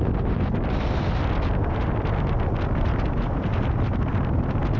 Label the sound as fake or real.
real